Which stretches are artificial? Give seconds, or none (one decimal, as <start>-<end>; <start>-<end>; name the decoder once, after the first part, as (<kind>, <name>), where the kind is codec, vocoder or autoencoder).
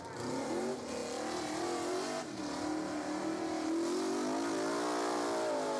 none